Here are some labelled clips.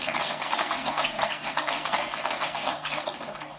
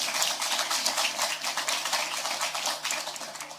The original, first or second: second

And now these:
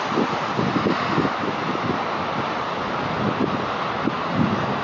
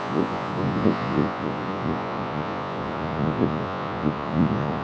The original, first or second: first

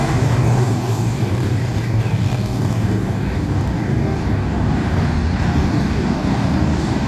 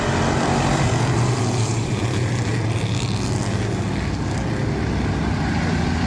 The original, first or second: second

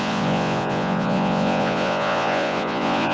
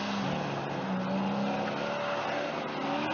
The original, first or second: second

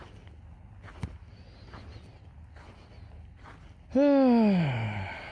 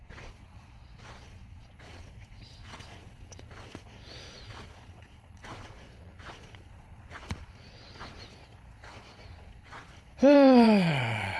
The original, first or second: first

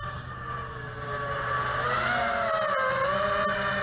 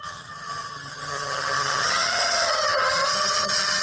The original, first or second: first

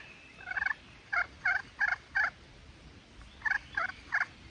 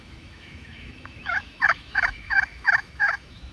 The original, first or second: first